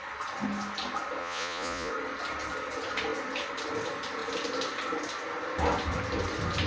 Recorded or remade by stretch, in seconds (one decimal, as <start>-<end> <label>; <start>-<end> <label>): 0.0-1.2 recorded; 1.2-1.9 remade; 1.9-6.7 recorded